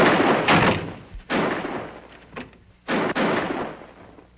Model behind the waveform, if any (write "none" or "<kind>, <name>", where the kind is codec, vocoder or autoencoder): none